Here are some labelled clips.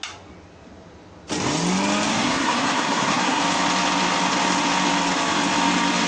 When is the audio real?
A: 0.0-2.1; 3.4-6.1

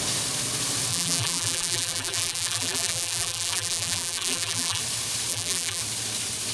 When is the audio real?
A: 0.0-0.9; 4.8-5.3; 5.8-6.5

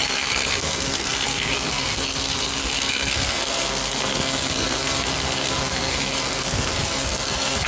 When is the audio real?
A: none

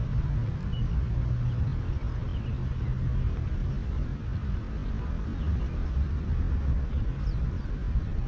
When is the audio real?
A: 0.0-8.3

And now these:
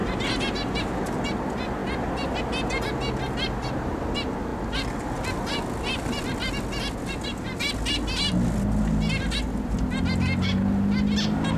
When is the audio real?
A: 0.0-11.6